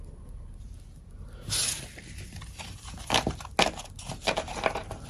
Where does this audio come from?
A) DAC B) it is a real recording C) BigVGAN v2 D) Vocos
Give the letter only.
B